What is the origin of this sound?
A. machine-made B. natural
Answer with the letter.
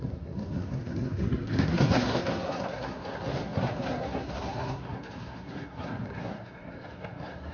A